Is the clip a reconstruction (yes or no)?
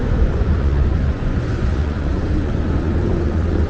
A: yes